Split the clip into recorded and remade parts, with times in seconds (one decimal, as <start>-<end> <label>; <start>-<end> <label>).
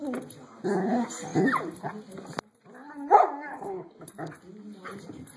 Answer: 0.0-3.5 recorded; 3.5-4.1 remade; 4.1-5.4 recorded